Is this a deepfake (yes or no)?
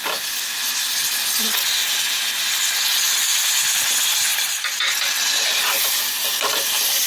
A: no